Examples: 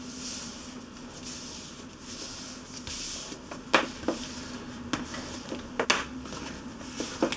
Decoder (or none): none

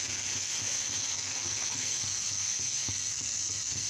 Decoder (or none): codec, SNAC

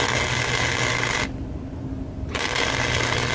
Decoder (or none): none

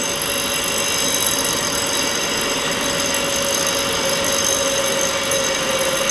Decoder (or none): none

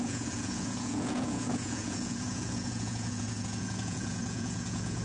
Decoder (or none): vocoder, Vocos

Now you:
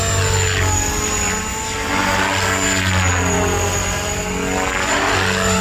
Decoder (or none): none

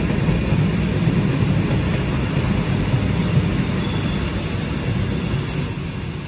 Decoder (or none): none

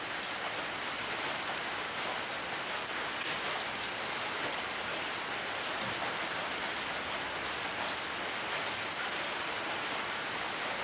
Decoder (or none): none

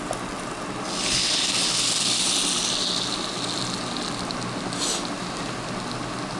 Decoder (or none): none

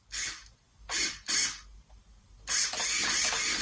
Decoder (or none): none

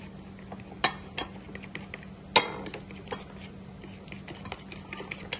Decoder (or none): none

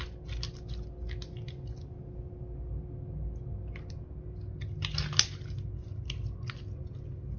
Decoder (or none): none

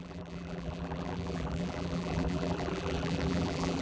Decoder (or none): vocoder, BigVGAN v2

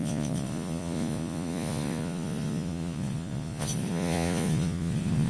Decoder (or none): vocoder, Vocos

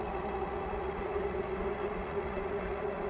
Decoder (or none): vocoder, Vocos